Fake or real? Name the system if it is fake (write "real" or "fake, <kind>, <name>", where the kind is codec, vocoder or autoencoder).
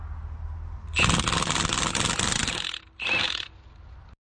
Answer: real